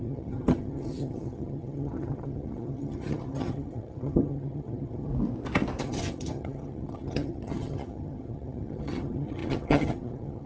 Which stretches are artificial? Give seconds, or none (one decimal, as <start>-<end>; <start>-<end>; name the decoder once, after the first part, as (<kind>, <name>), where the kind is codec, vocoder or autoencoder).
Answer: 0.0-5.1 (vocoder, HiFi-GAN); 5.8-10.5